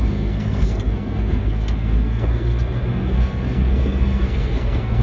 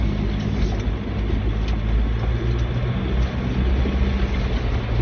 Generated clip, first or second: first